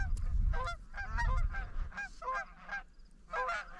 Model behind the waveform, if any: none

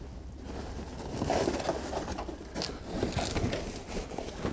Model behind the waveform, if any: none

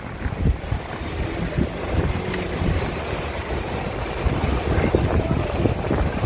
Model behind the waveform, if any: none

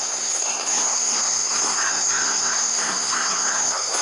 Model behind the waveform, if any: codec, SNAC